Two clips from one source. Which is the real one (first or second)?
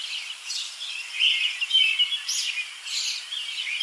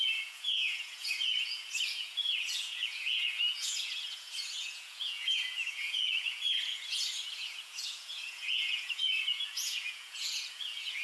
first